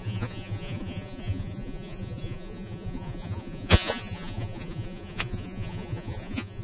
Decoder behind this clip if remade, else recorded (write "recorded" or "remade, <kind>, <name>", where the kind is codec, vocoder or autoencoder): remade, vocoder, Vocos